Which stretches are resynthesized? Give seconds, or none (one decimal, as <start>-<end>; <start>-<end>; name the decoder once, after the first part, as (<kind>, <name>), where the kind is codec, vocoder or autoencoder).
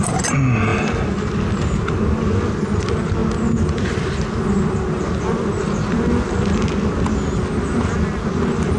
none